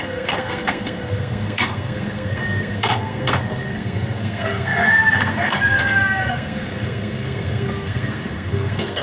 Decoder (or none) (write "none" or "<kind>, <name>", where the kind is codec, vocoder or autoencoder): codec, SNAC